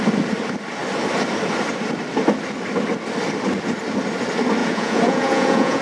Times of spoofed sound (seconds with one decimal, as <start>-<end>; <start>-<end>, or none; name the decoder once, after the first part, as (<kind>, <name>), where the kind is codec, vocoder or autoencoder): 4.6-5.8 (vocoder, Vocos)